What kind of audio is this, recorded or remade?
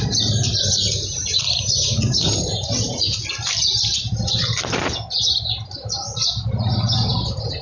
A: recorded